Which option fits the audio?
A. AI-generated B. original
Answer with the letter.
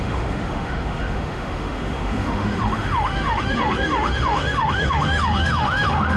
A